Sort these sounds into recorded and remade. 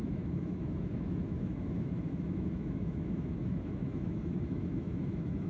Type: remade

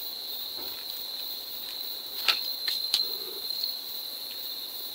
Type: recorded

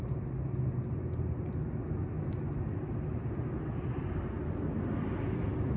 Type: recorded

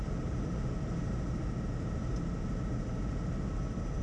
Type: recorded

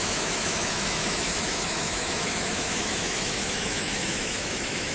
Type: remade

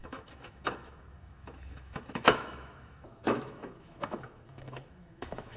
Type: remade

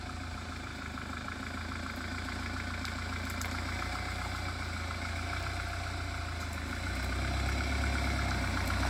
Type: recorded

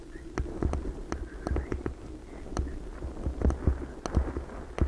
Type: recorded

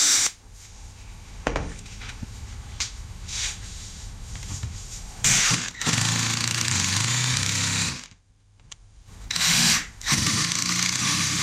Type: remade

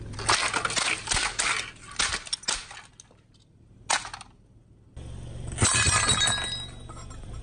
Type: recorded